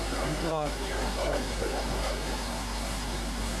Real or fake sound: fake